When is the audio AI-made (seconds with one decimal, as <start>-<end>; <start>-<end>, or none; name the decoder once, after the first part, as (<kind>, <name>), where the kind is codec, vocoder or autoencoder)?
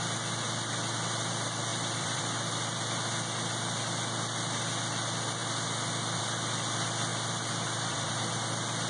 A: 1.7-2.2 (vocoder, BigVGAN v2); 7.1-8.1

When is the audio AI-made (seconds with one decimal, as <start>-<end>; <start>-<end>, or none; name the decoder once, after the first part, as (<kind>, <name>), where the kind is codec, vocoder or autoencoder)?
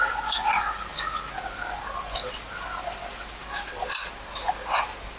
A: 3.4-4.1 (vocoder, BigVGAN v2)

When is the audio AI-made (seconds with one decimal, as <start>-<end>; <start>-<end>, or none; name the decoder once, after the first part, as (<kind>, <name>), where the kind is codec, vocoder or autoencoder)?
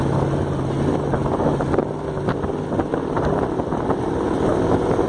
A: 2.9-3.5 (vocoder, BigVGAN v2)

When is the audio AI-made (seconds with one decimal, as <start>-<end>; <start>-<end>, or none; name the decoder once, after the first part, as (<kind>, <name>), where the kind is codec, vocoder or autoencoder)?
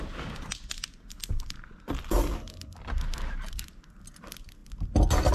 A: none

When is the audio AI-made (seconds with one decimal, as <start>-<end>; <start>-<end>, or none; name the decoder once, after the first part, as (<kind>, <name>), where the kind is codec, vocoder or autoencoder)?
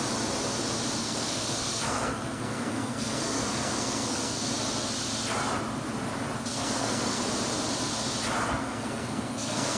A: 1.0-4.5 (codec, SNAC); 6.5-7.2; 8.6-9.8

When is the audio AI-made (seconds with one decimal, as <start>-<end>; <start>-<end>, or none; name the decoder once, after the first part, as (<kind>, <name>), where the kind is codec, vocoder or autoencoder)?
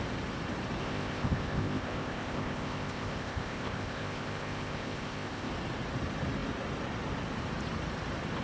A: 0.8-5.5 (codec, ZipCodec)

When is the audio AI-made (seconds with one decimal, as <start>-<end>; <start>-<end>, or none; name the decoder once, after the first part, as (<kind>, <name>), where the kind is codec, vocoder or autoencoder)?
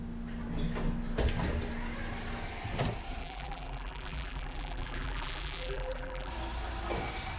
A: 3.2-6.3 (vocoder, BigVGAN v2)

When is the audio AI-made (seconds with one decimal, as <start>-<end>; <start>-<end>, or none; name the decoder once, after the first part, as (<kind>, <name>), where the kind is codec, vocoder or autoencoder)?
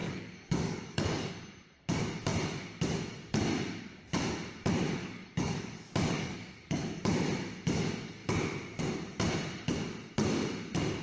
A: 0.0-1.3 (codec, DAC); 5.0-7.0